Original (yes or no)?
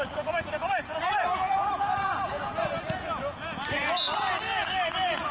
no